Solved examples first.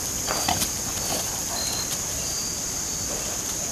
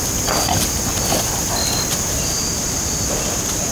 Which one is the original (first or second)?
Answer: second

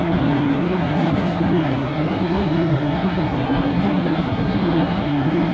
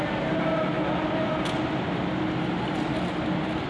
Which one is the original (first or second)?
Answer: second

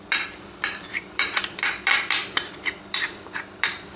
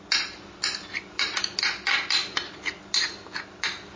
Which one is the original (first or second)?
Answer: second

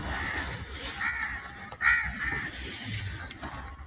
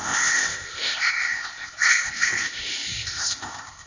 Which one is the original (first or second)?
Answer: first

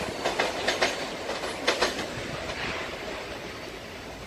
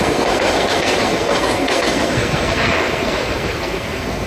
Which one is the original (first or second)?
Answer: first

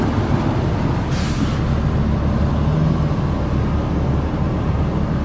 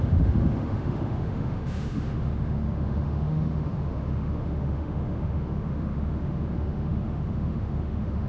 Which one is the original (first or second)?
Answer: first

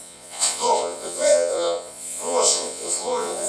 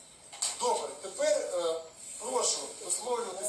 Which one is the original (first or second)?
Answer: second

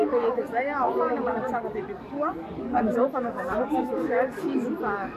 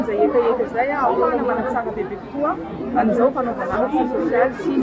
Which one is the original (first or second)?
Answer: second